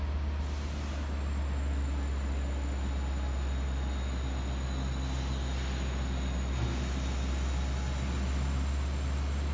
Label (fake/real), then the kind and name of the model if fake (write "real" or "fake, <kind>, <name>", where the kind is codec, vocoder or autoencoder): real